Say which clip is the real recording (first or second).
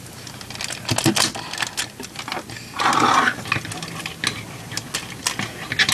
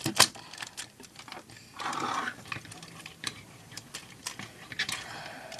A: first